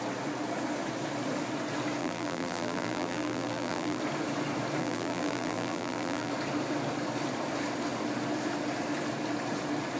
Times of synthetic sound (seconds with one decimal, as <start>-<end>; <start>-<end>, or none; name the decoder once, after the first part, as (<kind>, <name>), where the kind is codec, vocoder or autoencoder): 2.0-4.0 (vocoder, BigVGAN v2); 4.8-6.3